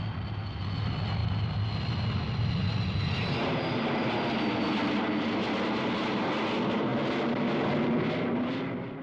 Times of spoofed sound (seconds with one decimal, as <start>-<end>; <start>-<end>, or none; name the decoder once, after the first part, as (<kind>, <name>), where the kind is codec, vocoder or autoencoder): none